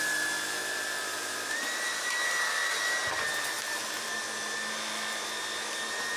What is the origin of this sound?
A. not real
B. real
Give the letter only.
B